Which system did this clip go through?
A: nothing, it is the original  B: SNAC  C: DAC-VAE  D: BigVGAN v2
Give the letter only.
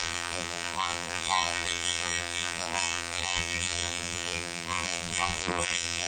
D